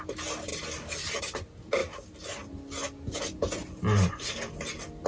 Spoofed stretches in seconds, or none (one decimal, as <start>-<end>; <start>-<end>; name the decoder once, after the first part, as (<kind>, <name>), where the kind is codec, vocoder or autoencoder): none